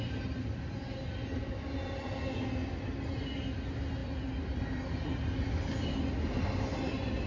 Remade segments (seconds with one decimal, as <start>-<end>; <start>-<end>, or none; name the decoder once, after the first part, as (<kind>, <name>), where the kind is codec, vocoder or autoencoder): none